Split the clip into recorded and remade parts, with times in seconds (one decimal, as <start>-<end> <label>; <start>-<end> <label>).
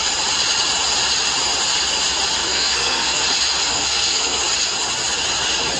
0.0-2.4 recorded; 2.4-3.2 remade; 3.2-3.8 recorded; 3.8-4.4 remade; 4.4-5.8 recorded